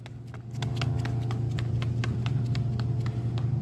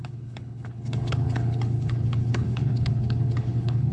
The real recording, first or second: first